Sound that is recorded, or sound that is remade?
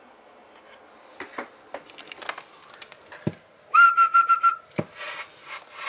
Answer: recorded